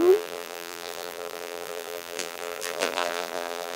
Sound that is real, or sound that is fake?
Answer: fake